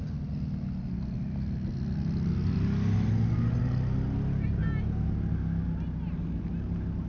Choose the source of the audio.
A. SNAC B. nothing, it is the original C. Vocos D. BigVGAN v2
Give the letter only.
B